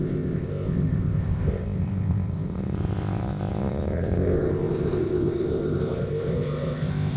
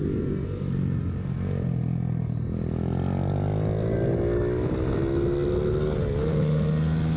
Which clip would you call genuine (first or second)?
second